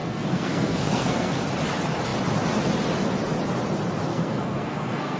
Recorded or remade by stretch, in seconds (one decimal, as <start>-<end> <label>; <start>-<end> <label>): 0.0-1.4 remade; 1.4-4.1 recorded; 4.1-5.2 remade